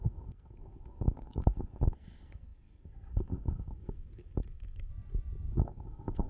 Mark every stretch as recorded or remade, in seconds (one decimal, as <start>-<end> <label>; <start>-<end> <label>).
0.0-4.9 remade; 4.9-5.6 recorded; 5.6-6.3 remade